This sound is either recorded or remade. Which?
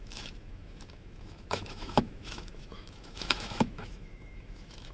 remade